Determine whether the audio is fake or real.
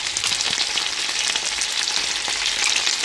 real